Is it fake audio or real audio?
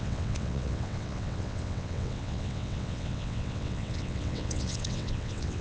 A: fake